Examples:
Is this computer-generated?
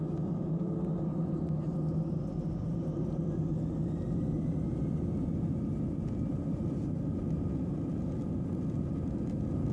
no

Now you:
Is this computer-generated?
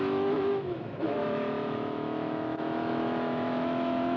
yes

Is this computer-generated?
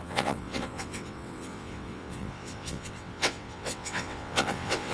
yes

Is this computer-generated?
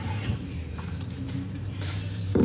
yes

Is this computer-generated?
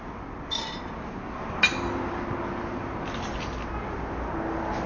no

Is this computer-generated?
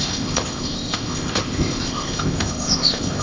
yes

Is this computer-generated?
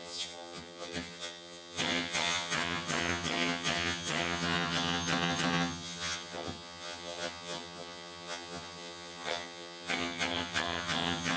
yes